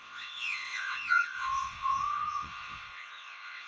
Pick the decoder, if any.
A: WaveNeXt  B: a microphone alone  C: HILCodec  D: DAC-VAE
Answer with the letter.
A